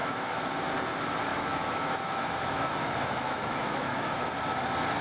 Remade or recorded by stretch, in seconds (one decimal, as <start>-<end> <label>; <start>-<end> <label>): 0.0-0.5 remade; 0.5-1.3 recorded; 1.3-4.3 remade; 4.3-5.0 recorded